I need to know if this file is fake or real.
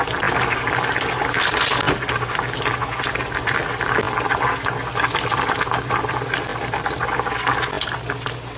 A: real